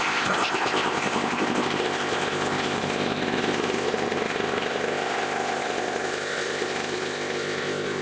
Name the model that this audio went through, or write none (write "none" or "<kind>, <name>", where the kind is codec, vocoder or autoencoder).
codec, ZipCodec